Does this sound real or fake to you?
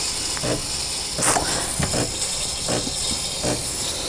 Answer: real